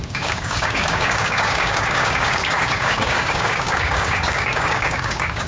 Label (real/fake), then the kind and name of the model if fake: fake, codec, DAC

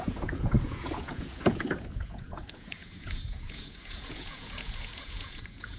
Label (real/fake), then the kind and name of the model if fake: fake, vocoder, Vocos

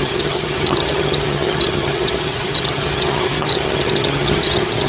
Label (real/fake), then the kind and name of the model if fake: fake, vocoder, HiFi-GAN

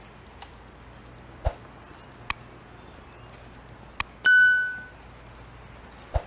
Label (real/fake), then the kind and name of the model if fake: real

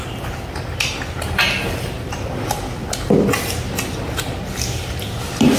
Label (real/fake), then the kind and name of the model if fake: real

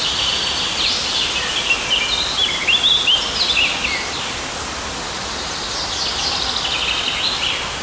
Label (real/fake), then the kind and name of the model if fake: real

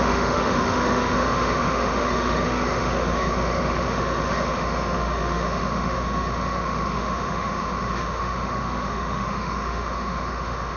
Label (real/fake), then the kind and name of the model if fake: fake, autoencoder, DAC-VAE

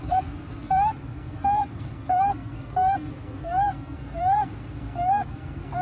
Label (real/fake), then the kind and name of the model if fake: fake, codec, SNAC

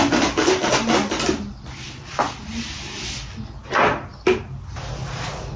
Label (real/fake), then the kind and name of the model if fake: real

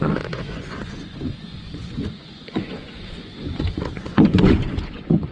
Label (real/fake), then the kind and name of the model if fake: fake, vocoder, Vocos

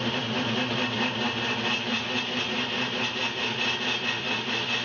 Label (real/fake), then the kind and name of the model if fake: real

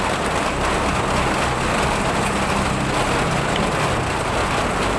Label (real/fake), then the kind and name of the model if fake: real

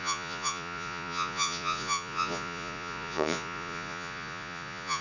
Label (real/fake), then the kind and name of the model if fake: fake, vocoder, Vocos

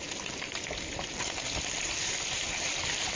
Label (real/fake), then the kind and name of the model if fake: real